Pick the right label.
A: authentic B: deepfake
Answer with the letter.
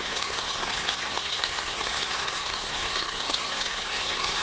B